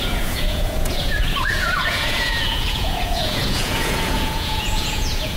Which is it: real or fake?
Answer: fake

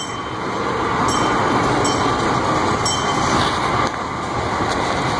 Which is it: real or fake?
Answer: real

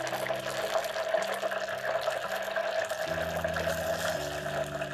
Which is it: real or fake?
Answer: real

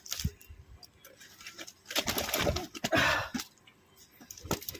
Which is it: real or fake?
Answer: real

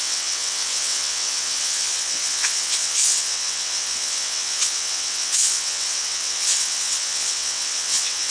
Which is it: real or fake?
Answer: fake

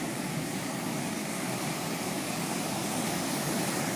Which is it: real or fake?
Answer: fake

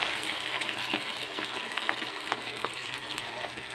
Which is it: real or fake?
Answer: fake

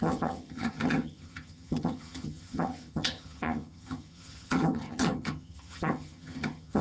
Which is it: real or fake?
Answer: fake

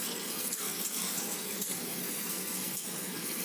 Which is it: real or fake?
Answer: fake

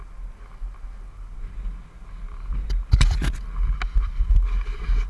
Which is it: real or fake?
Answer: real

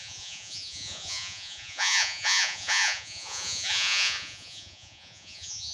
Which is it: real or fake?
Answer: fake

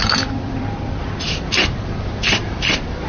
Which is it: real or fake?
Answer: fake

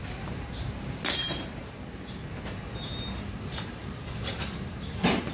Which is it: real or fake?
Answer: fake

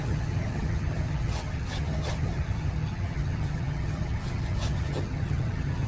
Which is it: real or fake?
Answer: fake